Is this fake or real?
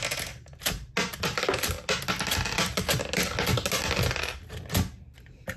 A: real